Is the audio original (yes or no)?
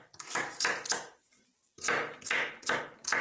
yes